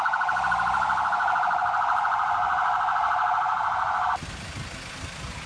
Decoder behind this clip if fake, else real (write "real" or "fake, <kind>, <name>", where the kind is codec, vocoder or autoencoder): real